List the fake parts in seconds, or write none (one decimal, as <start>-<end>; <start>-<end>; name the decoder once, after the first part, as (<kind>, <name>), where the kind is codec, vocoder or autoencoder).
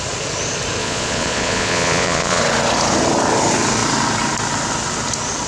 0.8-2.4 (vocoder, Vocos)